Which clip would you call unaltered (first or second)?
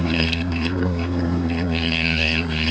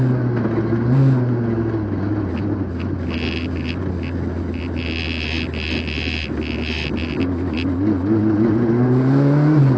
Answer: second